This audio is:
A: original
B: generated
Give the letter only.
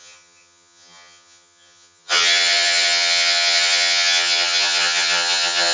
B